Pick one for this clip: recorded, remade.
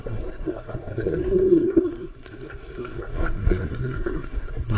remade